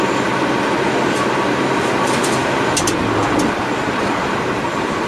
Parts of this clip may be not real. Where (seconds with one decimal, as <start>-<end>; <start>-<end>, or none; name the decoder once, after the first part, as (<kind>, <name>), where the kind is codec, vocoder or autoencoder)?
none